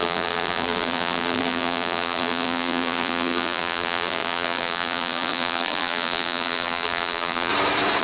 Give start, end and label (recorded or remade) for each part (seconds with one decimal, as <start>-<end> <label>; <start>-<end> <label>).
0.0-7.5 remade; 7.5-8.0 recorded